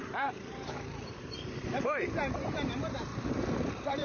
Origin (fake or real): fake